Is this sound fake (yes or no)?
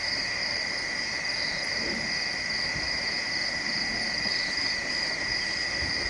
yes